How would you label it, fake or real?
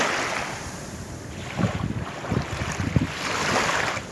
real